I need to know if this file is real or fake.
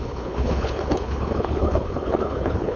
fake